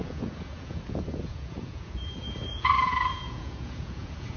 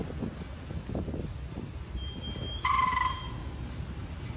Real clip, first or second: second